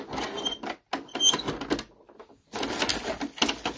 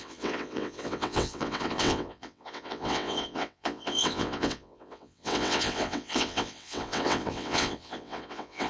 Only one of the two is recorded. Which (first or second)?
first